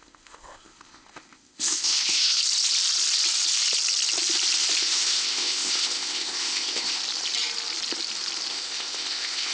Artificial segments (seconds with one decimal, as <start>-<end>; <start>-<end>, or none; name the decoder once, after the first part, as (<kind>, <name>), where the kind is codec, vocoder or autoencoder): 0.0-2.4 (codec, ZipCodec); 4.8-7.0; 8.5-9.5